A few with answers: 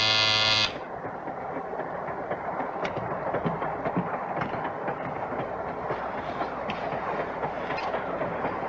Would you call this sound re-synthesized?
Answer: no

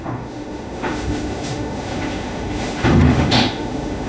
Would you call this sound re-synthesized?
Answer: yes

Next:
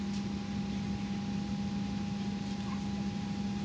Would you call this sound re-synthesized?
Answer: no